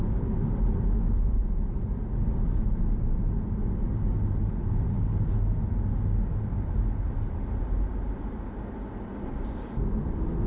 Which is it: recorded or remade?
recorded